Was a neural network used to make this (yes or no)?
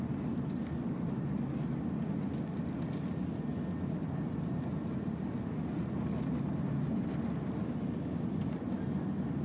no